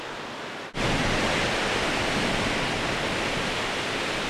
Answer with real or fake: real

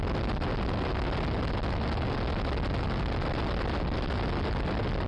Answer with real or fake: real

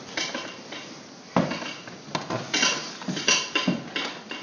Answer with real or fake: real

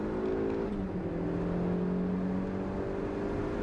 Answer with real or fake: real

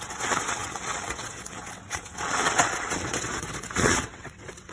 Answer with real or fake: fake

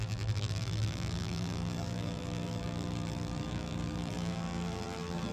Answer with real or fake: fake